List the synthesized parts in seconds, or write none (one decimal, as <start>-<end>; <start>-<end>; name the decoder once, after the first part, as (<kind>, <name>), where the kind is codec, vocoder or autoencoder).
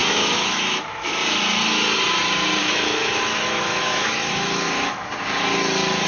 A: 0.0-1.1 (autoencoder, DAC-VAE); 2.6-5.1